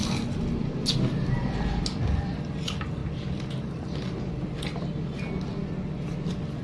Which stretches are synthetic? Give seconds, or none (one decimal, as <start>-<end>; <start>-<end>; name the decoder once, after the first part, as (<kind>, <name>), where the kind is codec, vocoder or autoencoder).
none